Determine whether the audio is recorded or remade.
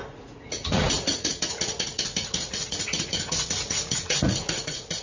remade